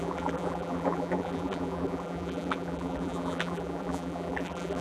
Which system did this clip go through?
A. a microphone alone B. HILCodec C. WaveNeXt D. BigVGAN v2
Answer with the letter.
D